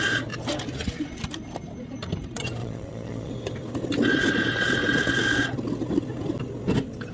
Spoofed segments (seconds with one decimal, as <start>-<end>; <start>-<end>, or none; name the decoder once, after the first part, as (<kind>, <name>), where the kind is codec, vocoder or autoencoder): 2.6-3.3 (vocoder, Vocos)